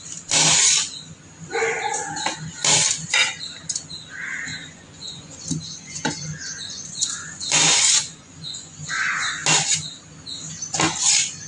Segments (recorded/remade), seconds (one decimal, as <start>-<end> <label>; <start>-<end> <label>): 0.0-4.5 recorded; 4.5-9.3 remade; 9.3-11.5 recorded